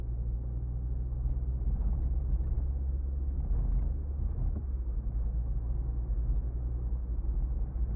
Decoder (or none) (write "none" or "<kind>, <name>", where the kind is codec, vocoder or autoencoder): none